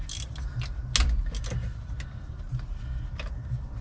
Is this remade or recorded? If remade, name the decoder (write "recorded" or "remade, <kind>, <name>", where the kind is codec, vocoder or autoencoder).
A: recorded